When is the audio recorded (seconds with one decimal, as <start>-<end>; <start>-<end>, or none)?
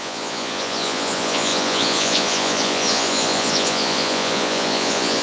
none